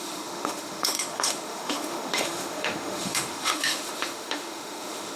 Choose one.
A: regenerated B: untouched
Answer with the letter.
A